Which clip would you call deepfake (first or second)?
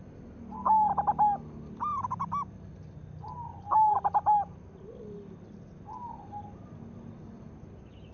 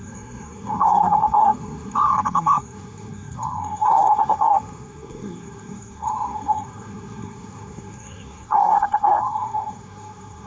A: second